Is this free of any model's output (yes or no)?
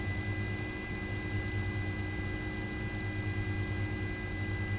yes